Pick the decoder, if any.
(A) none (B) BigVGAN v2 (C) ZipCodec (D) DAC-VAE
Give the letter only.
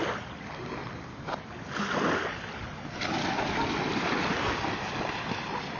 A